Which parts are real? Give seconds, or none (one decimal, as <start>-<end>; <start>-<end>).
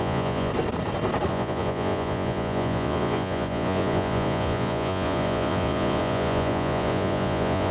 0.5-1.3